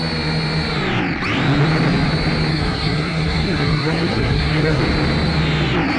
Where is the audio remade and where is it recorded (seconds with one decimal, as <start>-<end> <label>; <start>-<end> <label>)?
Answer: 0.0-2.5 recorded; 2.5-4.8 remade; 4.8-6.0 recorded